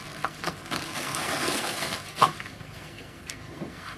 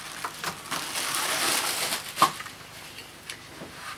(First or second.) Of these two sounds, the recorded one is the second